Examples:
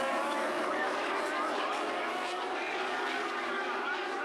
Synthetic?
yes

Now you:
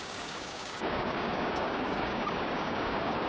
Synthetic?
yes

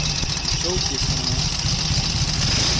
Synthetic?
no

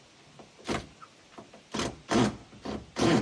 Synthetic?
no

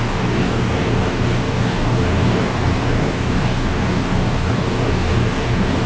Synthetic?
yes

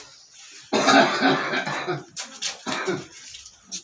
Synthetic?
no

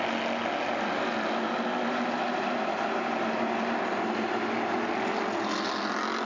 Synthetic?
no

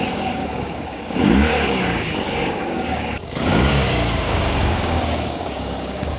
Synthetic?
yes